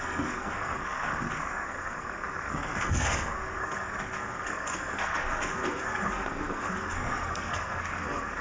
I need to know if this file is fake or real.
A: fake